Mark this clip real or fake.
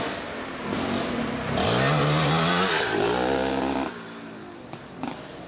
real